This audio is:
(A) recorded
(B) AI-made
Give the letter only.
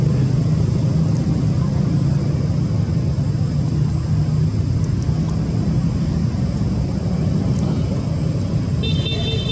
A